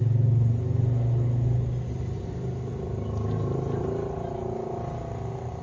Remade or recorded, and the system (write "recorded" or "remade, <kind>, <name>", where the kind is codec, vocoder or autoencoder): recorded